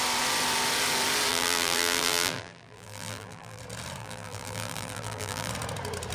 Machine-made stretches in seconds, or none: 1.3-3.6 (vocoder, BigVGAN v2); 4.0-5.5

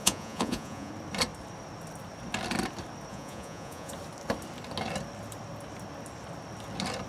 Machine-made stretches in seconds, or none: 0.0-0.9 (vocoder, Vocos); 3.1-3.9

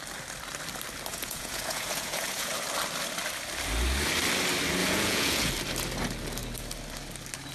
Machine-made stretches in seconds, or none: 1.1-2.5 (vocoder, Vocos); 4.8-5.5

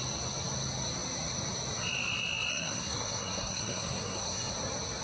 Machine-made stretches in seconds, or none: 2.5-4.5 (codec, SNAC)